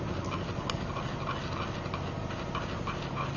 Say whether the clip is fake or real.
real